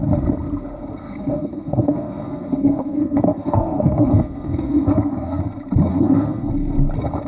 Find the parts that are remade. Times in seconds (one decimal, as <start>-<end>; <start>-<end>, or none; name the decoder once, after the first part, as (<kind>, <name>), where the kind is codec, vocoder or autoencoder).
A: 1.0-5.4 (codec, SNAC); 5.9-6.5